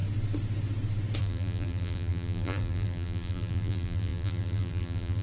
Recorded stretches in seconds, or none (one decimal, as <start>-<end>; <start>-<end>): 0.0-1.2